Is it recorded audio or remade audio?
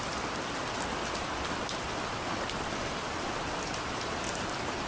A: recorded